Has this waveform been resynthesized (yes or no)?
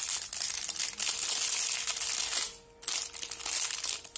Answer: no